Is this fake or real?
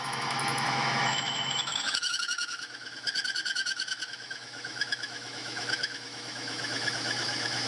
fake